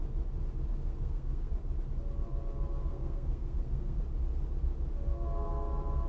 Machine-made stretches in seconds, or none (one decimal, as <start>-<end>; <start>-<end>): 0.7-1.5; 2.9-4.0